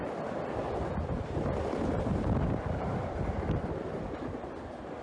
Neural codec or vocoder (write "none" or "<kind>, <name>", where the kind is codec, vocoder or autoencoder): none